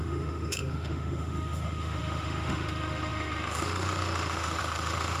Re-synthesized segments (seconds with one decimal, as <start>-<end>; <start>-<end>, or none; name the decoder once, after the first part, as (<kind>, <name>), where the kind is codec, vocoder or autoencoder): 0.0-5.2 (autoencoder, DAC-VAE)